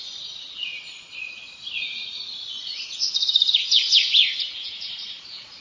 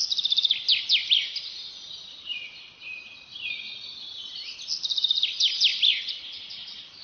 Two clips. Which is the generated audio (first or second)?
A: first